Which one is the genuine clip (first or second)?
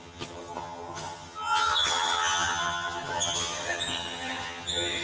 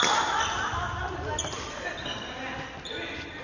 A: second